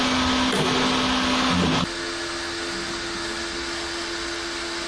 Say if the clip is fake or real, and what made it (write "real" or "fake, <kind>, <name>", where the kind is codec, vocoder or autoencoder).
real